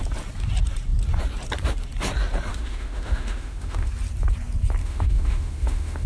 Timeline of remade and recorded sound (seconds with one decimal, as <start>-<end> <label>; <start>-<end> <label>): 0.0-2.5 recorded; 2.5-3.9 remade; 3.9-4.8 recorded; 4.8-6.1 remade